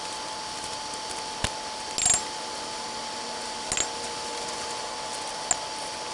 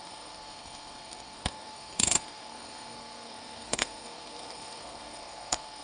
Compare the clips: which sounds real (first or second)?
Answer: first